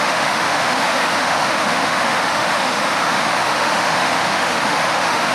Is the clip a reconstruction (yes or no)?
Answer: yes